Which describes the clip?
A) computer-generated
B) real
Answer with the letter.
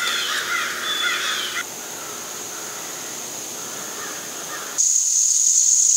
B